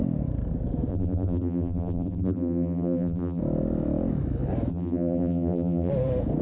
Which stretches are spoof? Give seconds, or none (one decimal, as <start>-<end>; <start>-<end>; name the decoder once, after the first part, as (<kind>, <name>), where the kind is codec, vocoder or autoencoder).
0.9-3.4 (vocoder, BigVGAN v2); 4.7-5.9